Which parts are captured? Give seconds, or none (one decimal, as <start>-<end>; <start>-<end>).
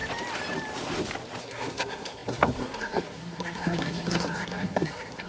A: 0.0-1.4